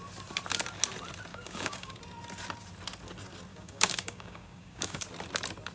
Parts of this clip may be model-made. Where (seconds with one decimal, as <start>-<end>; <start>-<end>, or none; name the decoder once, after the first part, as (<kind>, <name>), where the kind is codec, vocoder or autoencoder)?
1.3-2.0 (codec, DAC); 3.5-5.0